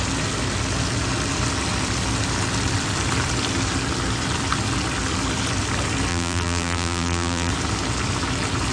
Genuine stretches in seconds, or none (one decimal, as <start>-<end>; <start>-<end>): 0.0-6.1; 7.5-8.7